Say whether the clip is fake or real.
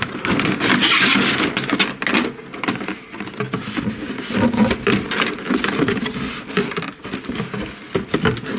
real